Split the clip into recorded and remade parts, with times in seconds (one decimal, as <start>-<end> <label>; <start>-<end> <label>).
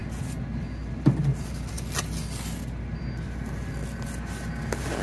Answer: 0.0-5.0 recorded